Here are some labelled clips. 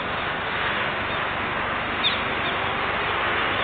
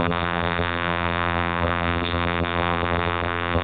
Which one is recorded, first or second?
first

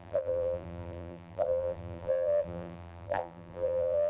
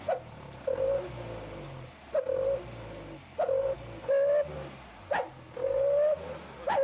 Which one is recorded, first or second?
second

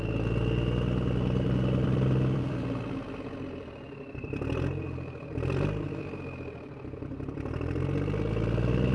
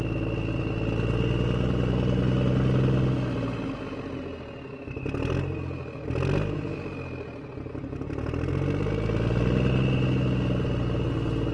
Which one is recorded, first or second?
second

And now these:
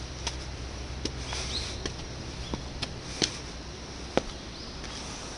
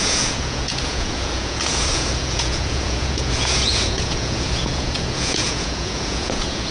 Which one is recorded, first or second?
first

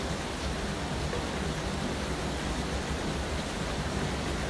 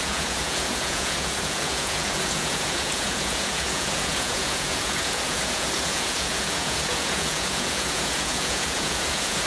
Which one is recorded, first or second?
first